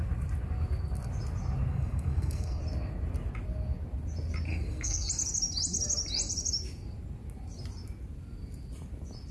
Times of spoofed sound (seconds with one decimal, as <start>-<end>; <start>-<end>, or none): 1.7-2.6; 4.5-5.1